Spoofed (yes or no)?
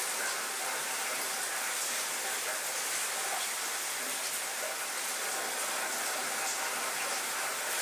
no